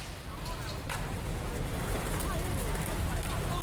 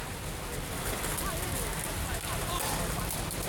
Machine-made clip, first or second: second